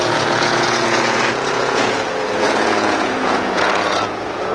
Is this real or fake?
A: fake